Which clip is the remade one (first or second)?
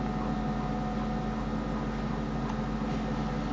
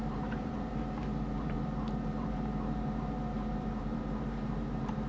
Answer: second